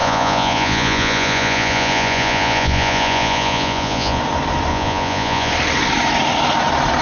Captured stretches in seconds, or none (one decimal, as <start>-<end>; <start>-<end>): 4.2-4.7; 5.5-7.0